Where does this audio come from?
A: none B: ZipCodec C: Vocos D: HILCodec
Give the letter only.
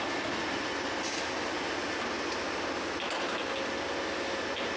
A